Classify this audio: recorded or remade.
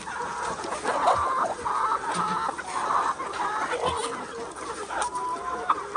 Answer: recorded